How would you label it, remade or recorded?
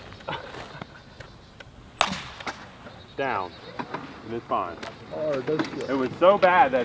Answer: recorded